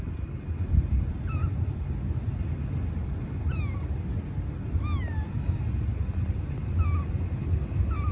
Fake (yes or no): no